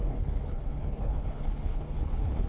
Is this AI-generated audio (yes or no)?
yes